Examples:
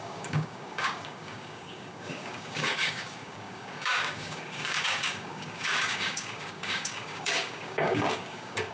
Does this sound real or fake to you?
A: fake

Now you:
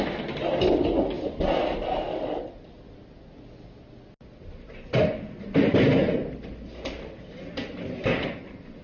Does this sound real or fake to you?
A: real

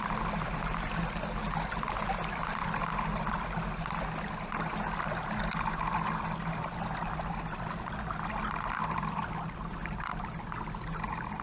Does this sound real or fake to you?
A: real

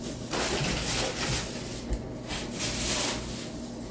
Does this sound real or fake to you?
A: real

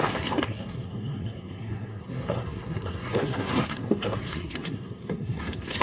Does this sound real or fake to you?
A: fake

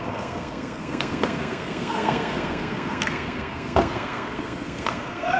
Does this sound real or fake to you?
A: fake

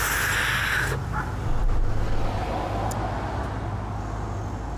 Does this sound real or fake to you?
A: real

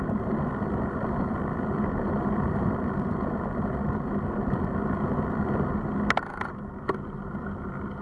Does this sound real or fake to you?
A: real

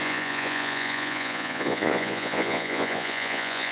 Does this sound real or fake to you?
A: fake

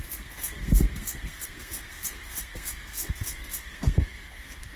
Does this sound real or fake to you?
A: fake